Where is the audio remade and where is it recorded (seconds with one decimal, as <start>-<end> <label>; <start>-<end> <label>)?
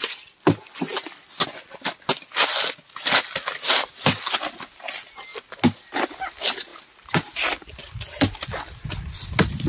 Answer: 0.0-9.7 recorded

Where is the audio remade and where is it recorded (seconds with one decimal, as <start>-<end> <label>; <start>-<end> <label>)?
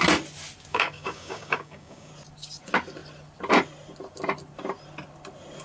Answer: 0.0-0.7 recorded; 0.7-2.1 remade; 2.1-5.6 recorded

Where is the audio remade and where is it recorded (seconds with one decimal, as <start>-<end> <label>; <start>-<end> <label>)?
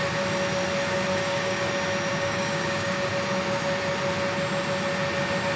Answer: 0.0-1.1 recorded; 1.1-1.7 remade; 1.7-2.1 recorded; 2.1-3.1 remade; 3.1-5.6 recorded